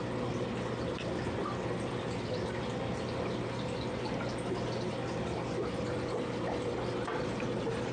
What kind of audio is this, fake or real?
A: real